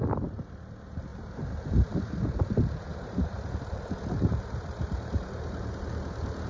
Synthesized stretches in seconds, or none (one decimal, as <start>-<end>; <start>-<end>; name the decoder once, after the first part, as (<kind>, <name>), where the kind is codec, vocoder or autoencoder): 1.1-1.7 (vocoder, BigVGAN v2); 2.9-5.7